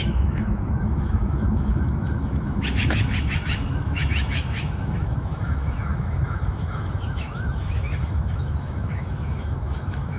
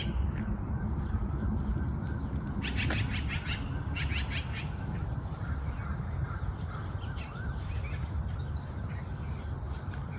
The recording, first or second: second